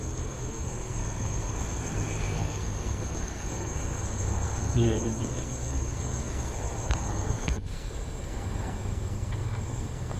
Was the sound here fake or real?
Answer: fake